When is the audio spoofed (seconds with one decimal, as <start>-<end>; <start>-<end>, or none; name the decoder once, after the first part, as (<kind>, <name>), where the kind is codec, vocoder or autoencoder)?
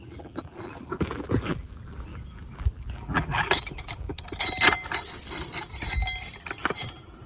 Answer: 0.0-4.1 (vocoder, BigVGAN v2); 6.4-7.3